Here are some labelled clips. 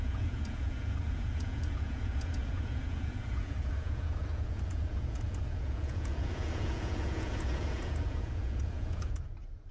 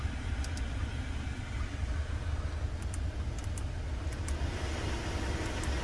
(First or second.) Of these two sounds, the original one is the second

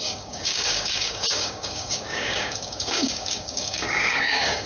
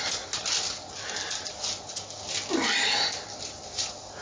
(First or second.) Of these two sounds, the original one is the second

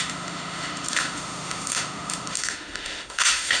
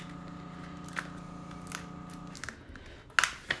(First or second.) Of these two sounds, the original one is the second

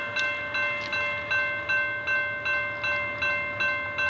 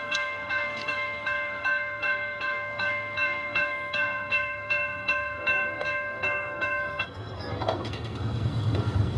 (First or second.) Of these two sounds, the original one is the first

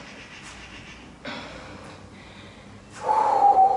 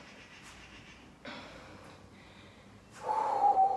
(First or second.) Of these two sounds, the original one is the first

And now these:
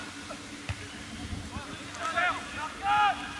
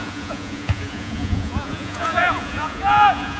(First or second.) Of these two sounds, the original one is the first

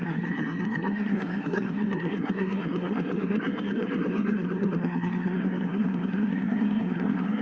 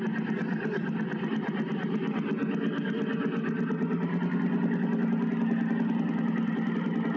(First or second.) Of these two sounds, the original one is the second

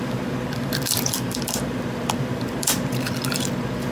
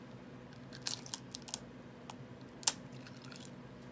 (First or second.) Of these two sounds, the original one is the second